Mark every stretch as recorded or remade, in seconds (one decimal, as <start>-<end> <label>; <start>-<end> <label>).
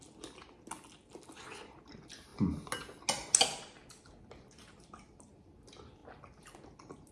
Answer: 0.0-7.1 recorded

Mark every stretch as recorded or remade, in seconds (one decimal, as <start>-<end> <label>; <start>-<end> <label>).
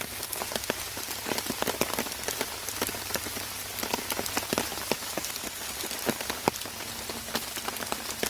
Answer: 0.0-8.3 recorded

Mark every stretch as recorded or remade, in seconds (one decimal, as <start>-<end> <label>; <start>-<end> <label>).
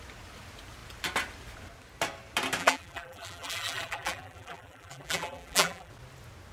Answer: 0.0-2.6 recorded; 2.6-5.9 remade; 5.9-6.5 recorded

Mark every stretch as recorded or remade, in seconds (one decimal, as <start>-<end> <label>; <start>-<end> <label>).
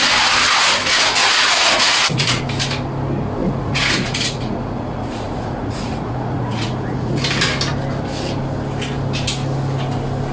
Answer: 0.0-1.3 recorded; 1.3-2.4 remade; 2.4-3.4 recorded; 3.4-7.1 remade; 7.1-10.3 recorded